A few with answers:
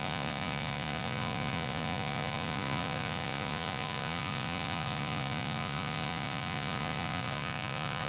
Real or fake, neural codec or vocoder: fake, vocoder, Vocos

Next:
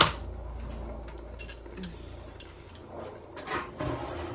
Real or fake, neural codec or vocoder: real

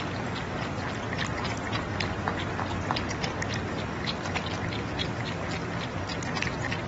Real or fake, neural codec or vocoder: real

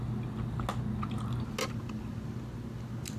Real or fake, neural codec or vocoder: real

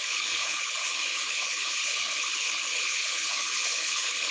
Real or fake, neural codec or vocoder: fake, codec, HILCodec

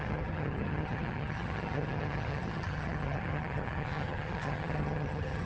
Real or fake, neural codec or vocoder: fake, vocoder, HiFi-GAN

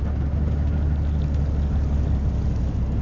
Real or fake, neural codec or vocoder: real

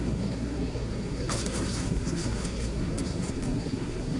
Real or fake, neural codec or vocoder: fake, codec, SNAC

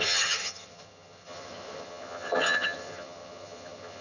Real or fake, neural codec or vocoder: fake, vocoder, HiFi-GAN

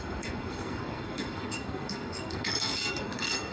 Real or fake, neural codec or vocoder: fake, codec, SNAC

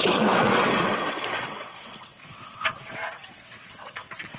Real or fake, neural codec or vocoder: fake, vocoder, WaveNeXt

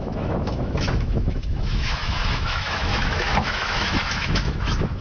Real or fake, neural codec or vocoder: fake, autoencoder, DAC-VAE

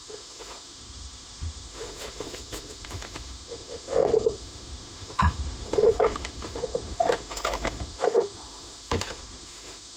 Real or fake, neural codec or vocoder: fake, autoencoder, DAC-VAE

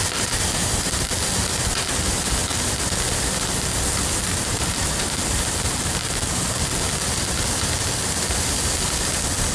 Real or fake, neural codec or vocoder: real